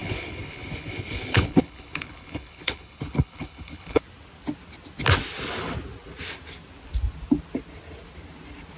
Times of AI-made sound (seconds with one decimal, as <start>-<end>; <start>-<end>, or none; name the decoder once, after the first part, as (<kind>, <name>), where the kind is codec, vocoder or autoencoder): 0.0-4.0 (codec, HILCodec)

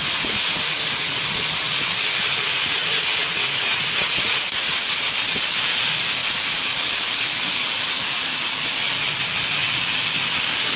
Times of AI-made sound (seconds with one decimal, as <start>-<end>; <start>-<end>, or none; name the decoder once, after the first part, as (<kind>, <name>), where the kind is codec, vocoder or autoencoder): 0.0-1.2 (vocoder, Vocos); 2.5-5.1